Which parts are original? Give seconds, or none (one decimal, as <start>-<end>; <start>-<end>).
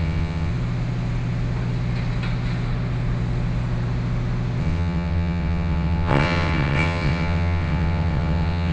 0.5-4.6